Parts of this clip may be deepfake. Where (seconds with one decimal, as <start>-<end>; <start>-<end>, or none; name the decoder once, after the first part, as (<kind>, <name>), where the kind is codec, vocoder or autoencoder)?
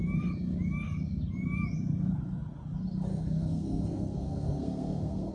3.1-5.3 (codec, SNAC)